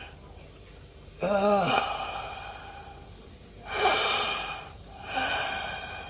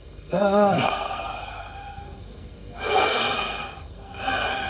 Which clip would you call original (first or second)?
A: first